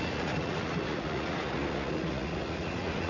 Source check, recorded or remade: remade